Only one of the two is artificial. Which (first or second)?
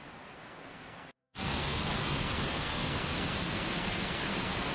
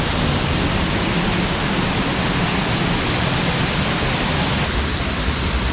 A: first